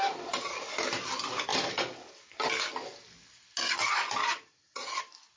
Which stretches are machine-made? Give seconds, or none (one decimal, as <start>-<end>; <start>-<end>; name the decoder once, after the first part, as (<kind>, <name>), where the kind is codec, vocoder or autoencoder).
4.2-5.0 (vocoder, Vocos)